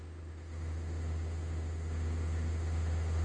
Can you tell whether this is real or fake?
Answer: fake